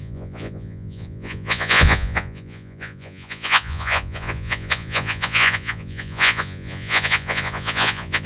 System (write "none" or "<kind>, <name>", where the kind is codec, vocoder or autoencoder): vocoder, Vocos